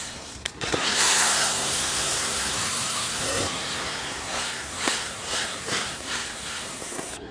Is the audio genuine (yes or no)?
no